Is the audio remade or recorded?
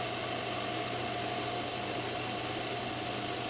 recorded